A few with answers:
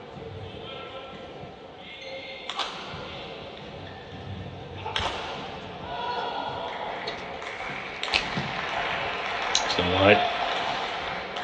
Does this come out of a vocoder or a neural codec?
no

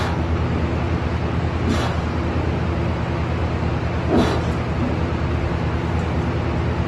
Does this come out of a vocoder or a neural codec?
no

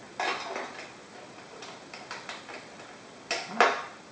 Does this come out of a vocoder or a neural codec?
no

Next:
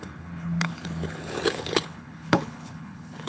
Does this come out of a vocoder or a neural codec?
yes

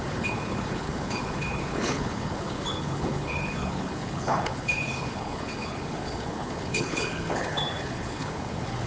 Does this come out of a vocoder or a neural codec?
yes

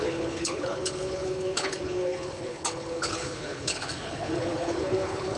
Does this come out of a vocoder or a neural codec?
yes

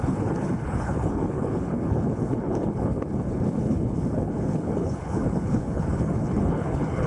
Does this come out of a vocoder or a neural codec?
yes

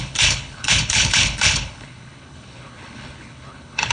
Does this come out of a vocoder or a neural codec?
yes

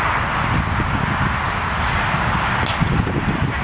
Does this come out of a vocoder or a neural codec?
no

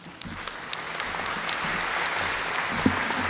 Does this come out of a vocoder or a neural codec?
no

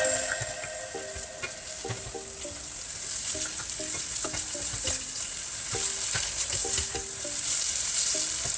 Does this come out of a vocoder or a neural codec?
no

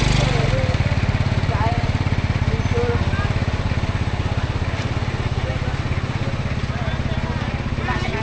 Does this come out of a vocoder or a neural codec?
no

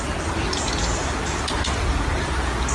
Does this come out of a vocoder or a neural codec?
no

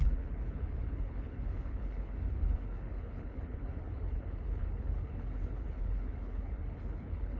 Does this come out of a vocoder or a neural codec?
yes